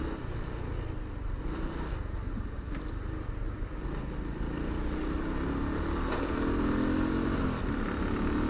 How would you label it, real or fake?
real